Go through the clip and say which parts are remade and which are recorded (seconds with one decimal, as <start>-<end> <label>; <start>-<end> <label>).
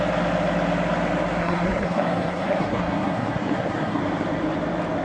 0.0-1.4 recorded; 1.4-4.0 remade; 4.0-5.0 recorded